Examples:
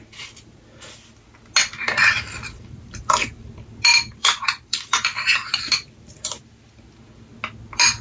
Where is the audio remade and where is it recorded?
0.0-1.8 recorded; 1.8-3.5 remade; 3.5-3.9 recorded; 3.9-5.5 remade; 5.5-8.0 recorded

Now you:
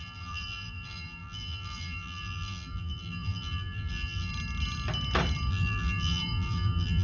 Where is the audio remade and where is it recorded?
0.0-4.3 remade; 4.3-5.5 recorded; 5.5-7.0 remade

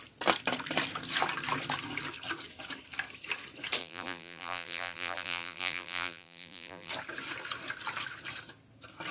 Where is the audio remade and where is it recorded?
0.0-3.8 recorded; 3.8-6.9 remade; 6.9-9.1 recorded

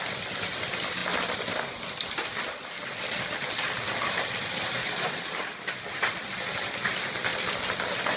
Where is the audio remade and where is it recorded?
0.0-8.2 recorded

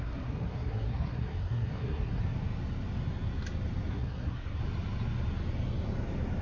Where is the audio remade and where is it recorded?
0.0-2.2 remade; 2.2-3.9 recorded; 3.9-4.6 remade; 4.6-6.4 recorded

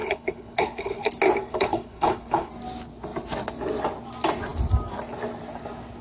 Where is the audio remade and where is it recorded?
0.0-1.1 remade; 1.1-1.5 recorded; 1.5-2.5 remade; 2.5-6.0 recorded